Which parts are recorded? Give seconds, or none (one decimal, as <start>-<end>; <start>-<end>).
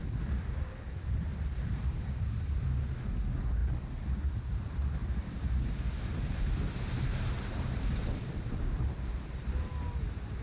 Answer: 0.0-1.3; 2.6-5.0; 9.2-10.4